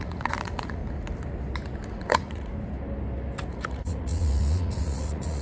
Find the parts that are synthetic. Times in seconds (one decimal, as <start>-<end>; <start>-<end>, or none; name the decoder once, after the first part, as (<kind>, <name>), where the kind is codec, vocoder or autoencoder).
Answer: 0.0-0.8 (vocoder, Vocos); 1.9-2.5; 3.5-5.4